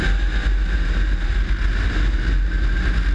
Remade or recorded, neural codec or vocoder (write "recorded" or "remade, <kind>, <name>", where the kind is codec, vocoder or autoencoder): recorded